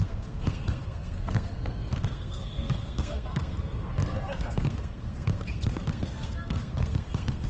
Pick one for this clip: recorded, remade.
remade